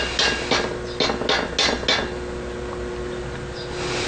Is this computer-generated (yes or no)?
no